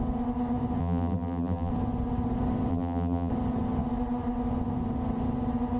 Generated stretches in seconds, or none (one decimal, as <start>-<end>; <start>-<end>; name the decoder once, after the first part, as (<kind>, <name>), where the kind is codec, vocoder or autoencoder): 0.8-1.7 (vocoder, BigVGAN v2); 2.7-3.3